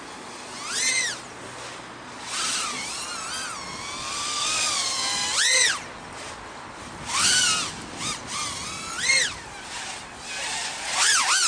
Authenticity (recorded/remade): recorded